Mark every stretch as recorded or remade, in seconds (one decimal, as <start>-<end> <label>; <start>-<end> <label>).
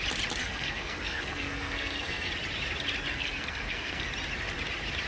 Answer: 0.0-0.4 recorded; 0.4-2.3 remade; 2.3-3.1 recorded; 3.1-4.1 remade; 4.1-5.1 recorded